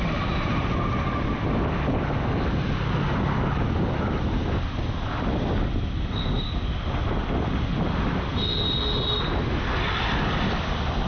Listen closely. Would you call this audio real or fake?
real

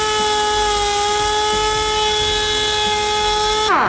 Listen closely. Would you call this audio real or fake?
real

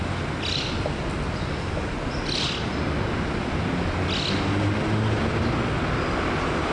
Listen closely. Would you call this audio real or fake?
real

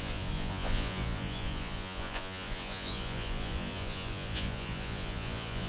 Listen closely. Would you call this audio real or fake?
fake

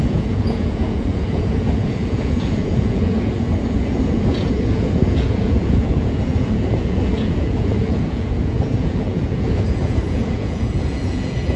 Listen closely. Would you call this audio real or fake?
fake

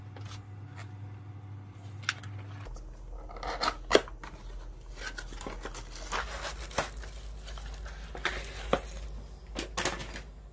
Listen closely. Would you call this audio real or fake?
real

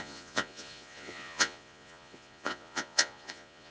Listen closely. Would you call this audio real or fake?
fake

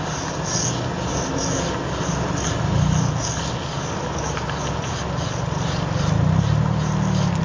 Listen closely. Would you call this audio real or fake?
real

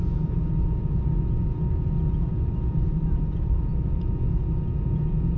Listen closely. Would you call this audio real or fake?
fake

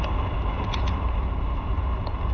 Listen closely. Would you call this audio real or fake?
real